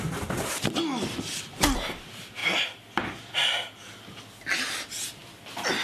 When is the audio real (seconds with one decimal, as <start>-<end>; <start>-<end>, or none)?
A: 0.0-5.8